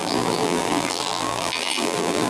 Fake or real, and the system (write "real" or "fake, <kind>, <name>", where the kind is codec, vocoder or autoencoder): fake, vocoder, BigVGAN v2